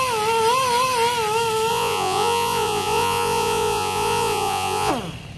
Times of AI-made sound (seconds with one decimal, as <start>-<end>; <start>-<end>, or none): 1.7-4.9